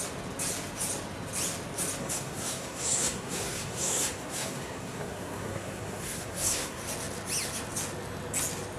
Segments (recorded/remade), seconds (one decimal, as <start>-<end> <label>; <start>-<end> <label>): 0.0-2.0 recorded; 2.0-6.8 remade; 6.8-8.8 recorded